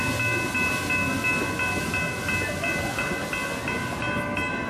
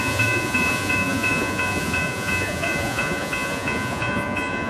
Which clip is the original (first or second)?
first